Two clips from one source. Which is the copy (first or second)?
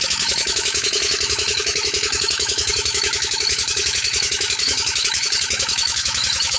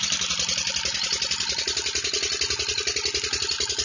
first